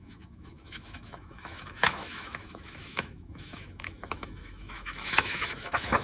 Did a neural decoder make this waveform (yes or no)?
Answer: yes